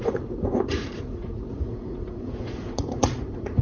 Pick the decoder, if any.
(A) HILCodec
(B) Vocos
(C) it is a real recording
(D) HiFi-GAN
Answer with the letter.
B